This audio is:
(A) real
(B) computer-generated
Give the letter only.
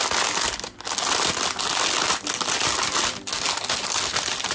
A